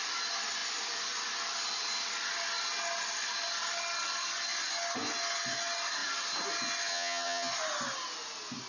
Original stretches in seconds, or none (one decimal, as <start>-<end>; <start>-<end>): 0.0-6.9; 7.5-8.7